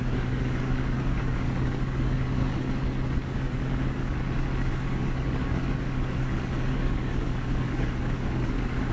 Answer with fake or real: fake